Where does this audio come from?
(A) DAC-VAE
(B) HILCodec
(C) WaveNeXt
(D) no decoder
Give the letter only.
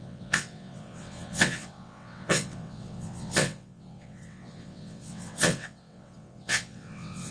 C